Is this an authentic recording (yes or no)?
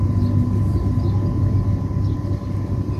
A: yes